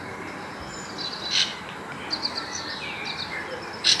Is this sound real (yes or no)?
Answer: yes